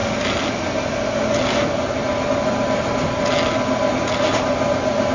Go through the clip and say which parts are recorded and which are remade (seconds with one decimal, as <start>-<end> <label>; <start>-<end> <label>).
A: 0.0-5.1 recorded